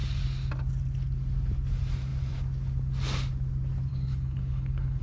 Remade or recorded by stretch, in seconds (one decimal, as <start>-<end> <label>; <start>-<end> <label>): 0.0-3.9 recorded; 3.9-5.0 remade